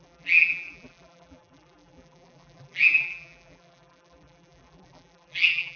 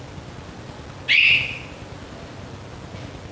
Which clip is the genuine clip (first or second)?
second